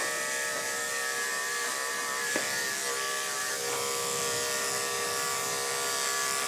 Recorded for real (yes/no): no